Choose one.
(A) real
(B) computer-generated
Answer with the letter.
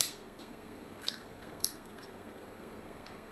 B